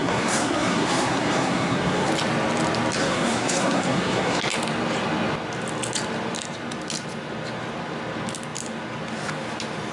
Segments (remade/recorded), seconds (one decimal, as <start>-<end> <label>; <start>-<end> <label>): 0.0-2.1 remade; 2.1-3.0 recorded; 3.0-4.4 remade; 4.4-9.9 recorded